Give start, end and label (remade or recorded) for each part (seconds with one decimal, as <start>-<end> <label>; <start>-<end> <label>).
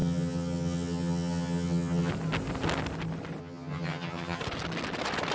0.0-2.1 remade; 2.1-3.4 recorded; 3.4-4.4 remade; 4.4-5.3 recorded